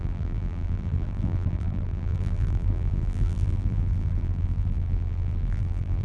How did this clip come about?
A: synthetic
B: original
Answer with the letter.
A